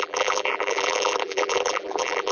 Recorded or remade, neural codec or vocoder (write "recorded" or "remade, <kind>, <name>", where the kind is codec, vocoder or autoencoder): remade, vocoder, BigVGAN v2